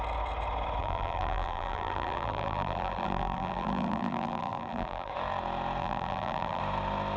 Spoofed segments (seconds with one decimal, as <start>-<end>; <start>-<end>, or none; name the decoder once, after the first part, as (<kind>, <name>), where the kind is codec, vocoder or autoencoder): 0.8-5.1 (vocoder, BigVGAN v2); 5.8-6.6